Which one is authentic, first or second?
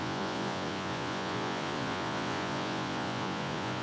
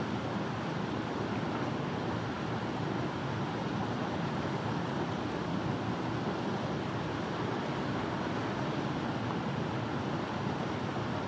second